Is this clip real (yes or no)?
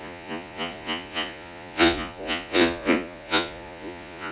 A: no